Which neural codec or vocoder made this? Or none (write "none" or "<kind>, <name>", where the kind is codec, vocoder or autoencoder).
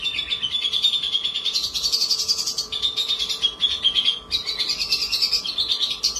vocoder, BigVGAN v2